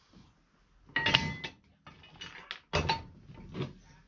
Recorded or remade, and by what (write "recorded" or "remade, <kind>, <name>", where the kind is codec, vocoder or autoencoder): recorded